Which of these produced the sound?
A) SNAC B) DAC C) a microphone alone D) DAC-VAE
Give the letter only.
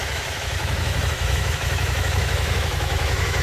D